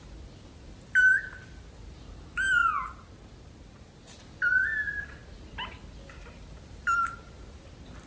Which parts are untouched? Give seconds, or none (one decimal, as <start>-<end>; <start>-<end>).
0.0-8.1